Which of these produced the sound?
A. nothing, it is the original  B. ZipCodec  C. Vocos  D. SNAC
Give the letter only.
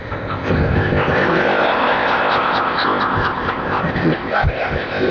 B